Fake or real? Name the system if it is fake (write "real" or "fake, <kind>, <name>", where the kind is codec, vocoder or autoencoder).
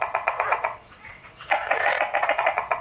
fake, vocoder, WaveNeXt